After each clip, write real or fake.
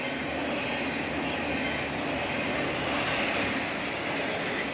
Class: real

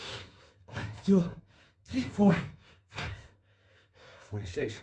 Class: fake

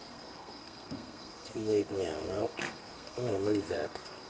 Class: fake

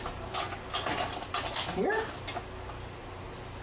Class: real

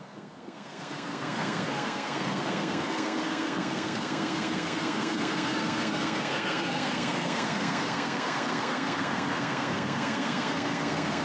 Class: fake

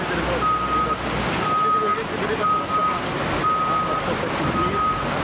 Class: real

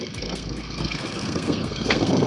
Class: fake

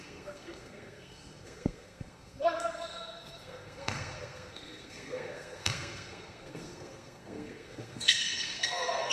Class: fake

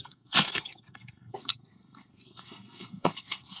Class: fake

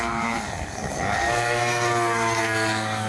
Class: fake